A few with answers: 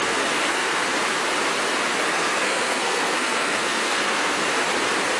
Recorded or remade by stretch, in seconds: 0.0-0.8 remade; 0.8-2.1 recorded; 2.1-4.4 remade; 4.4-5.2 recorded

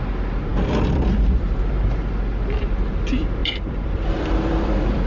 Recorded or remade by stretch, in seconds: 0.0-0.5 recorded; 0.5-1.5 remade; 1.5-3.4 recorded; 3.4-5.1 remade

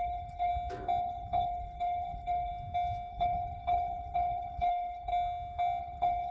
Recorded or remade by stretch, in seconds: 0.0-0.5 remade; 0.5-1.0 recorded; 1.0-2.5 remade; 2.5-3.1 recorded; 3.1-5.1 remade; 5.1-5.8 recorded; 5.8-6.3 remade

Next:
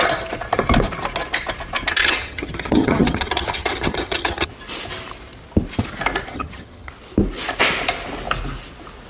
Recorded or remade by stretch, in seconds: 0.0-2.0 recorded; 2.0-4.5 remade; 4.5-6.3 recorded; 6.3-6.9 remade; 6.9-9.1 recorded

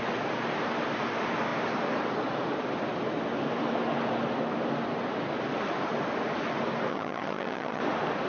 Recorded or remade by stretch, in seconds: 0.0-6.9 recorded; 6.9-7.8 remade; 7.8-8.3 recorded

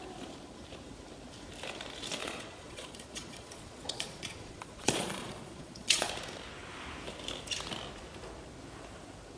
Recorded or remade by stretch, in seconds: 0.0-2.2 recorded; 2.2-6.1 remade; 6.1-9.4 recorded